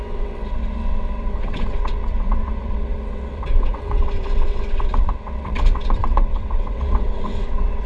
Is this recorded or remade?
remade